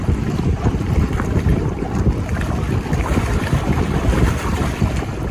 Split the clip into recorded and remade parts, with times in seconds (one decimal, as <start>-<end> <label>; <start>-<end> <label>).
0.0-1.5 remade; 1.5-2.7 recorded; 2.7-5.3 remade